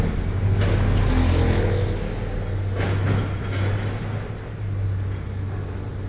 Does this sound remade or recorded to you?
recorded